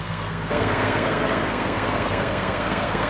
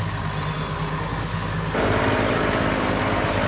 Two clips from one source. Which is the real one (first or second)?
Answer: second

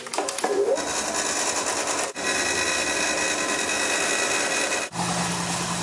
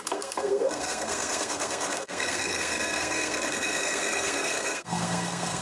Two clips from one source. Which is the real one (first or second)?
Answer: first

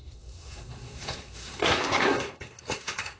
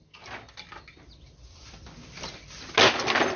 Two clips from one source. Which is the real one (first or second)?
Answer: second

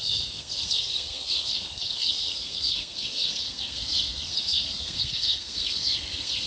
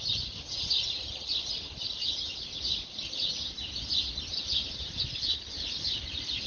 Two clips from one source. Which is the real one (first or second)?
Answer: second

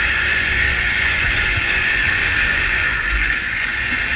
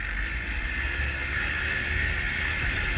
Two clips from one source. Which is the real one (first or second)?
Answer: second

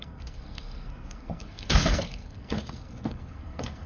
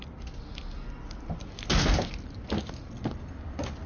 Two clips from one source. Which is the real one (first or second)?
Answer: second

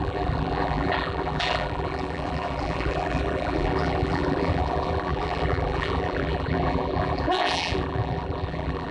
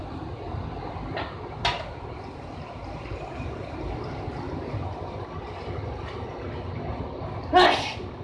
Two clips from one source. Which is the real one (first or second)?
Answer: second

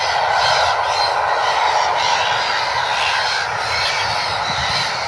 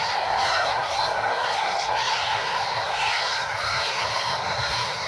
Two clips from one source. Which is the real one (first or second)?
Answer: first